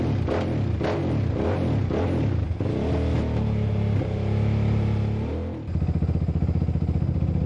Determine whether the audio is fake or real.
real